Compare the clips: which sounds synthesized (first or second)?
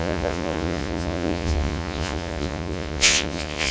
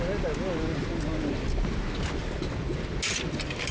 first